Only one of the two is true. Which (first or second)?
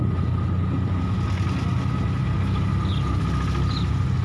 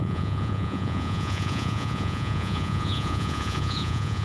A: first